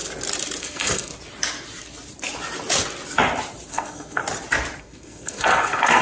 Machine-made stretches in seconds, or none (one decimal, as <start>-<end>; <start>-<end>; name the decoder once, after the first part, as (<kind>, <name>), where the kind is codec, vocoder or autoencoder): 0.6-1.1 (codec, SNAC); 3.7-4.2; 4.8-6.0